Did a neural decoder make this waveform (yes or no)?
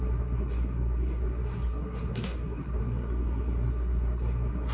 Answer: yes